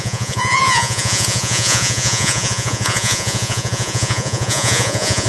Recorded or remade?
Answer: remade